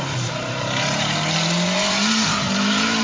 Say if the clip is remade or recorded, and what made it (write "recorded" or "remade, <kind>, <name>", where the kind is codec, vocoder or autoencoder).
remade, vocoder, BigVGAN v2